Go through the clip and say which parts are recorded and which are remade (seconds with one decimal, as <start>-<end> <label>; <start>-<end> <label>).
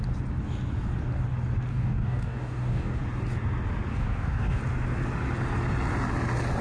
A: 0.0-1.7 recorded; 1.7-3.0 remade; 3.0-3.9 recorded; 3.9-4.6 remade; 4.6-6.6 recorded